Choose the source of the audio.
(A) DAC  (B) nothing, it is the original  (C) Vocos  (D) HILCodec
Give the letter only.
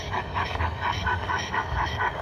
A